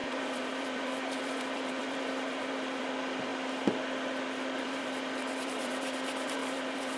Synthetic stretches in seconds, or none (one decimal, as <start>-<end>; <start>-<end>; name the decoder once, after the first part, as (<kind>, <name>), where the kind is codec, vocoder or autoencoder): 0.0-3.3 (vocoder, BigVGAN v2); 4.6-7.0